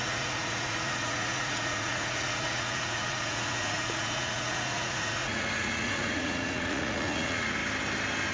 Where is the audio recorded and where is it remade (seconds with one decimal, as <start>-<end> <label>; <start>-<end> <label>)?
0.0-7.6 remade; 7.6-8.3 recorded